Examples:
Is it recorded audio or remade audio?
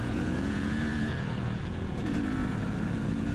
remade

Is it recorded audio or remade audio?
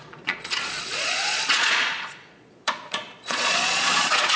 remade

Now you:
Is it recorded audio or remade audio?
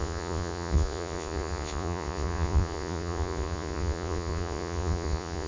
remade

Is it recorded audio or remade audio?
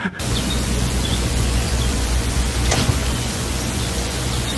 remade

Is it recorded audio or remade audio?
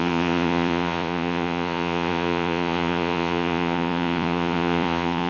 remade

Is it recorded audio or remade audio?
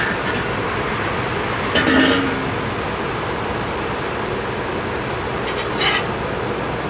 recorded